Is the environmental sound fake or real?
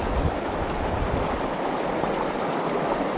real